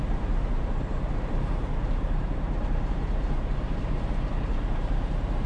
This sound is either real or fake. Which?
fake